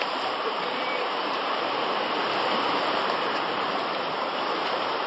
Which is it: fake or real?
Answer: fake